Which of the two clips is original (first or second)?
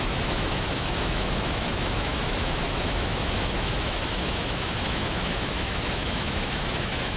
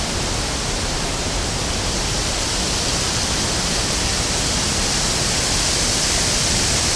second